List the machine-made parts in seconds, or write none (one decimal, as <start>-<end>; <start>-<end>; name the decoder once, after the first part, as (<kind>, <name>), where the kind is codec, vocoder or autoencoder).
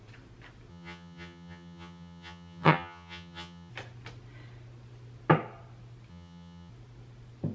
0.7-3.7 (vocoder, HiFi-GAN); 6.1-6.7